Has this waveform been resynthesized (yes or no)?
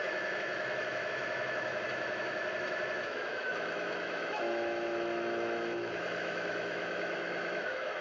yes